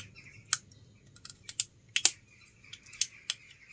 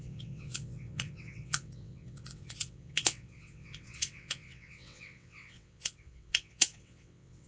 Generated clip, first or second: second